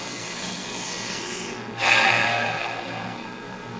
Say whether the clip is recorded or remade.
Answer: remade